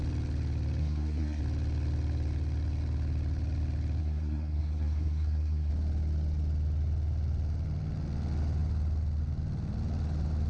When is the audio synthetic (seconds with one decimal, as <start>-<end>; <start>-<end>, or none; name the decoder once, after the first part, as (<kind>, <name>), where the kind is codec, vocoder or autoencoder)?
0.8-1.4 (codec, SNAC); 4.0-5.7